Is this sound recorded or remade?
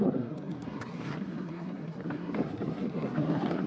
remade